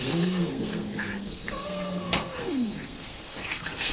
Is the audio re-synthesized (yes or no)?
yes